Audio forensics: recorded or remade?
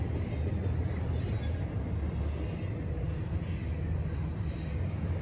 recorded